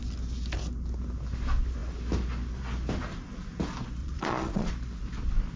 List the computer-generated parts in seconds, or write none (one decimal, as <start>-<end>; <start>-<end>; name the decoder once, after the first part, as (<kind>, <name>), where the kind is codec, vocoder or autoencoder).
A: 4.0-4.7 (vocoder, Vocos)